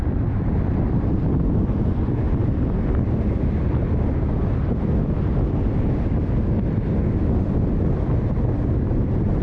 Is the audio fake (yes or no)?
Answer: no